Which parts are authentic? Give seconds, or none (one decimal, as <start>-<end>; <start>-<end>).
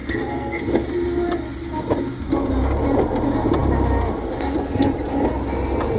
0.6-6.0